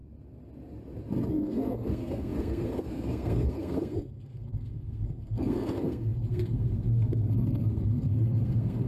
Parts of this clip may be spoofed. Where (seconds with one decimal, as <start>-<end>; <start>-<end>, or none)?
1.3-8.9